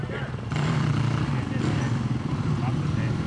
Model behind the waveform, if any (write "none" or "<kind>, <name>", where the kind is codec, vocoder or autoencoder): none